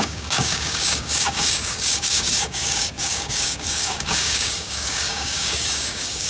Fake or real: fake